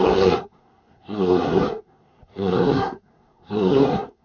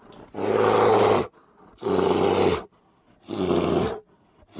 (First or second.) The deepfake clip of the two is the first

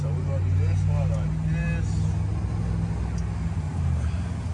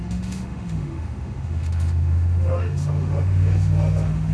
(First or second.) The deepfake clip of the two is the second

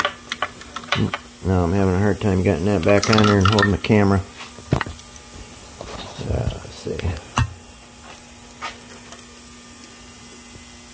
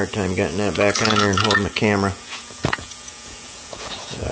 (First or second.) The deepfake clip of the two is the second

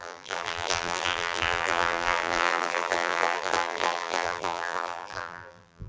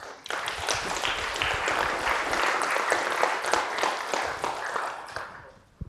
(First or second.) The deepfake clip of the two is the first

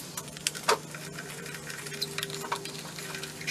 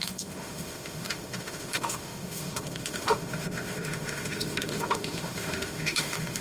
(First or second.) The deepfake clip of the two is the second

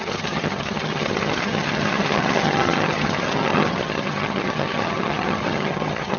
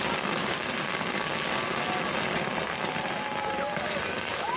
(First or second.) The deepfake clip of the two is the first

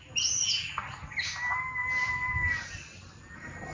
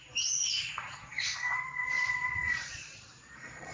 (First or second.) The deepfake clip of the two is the second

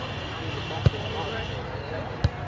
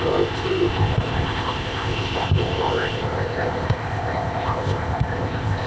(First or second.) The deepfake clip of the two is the second